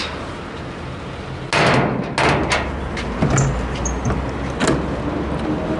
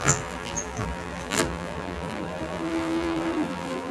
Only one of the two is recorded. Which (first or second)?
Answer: first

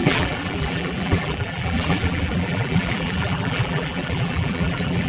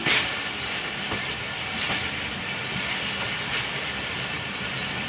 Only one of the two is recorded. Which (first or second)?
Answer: second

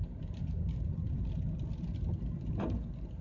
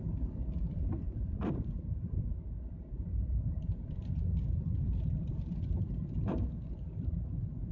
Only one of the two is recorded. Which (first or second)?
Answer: first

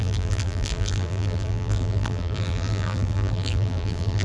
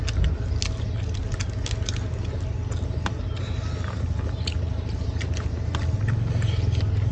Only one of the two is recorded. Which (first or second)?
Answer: second